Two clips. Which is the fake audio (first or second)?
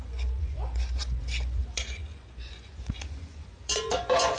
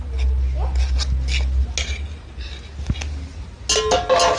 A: first